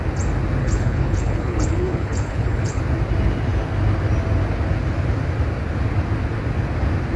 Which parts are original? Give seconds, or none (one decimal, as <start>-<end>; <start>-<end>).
0.0-0.6; 2.8-7.2